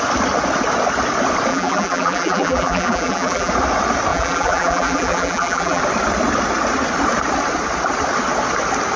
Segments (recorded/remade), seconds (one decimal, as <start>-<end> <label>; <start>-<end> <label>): 0.0-1.5 recorded; 1.5-3.5 remade; 3.5-4.1 recorded; 4.1-5.8 remade; 5.8-9.0 recorded